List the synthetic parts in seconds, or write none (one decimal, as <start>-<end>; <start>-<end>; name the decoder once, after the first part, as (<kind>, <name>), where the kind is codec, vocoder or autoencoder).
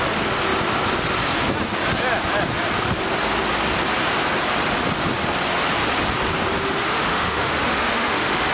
6.8-8.5 (autoencoder, DAC-VAE)